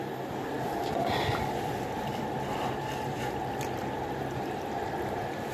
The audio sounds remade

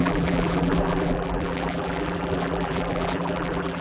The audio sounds remade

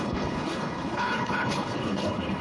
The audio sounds remade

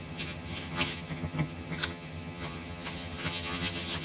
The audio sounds remade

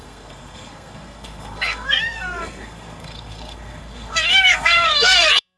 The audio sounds remade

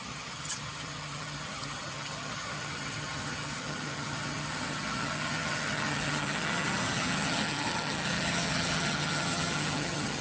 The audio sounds remade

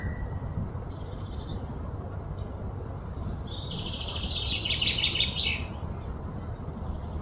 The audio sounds recorded